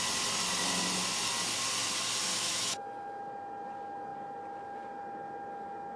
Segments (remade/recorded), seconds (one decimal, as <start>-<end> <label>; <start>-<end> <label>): 0.0-2.3 recorded; 2.3-3.2 remade; 3.2-6.0 recorded